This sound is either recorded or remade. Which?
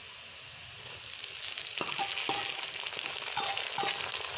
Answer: recorded